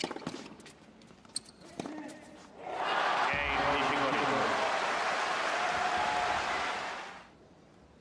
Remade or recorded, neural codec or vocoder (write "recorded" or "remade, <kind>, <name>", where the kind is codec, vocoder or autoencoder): recorded